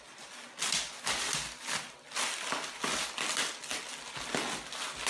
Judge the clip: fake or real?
real